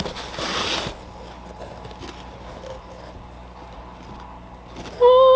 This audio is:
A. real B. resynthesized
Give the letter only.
A